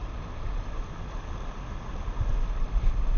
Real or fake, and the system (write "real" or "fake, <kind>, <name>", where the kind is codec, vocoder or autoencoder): real